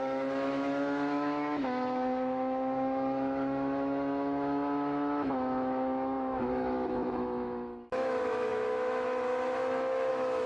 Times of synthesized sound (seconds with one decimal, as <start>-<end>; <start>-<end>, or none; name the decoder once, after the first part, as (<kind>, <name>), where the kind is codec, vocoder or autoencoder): 0.0-10.5 (autoencoder, DAC-VAE)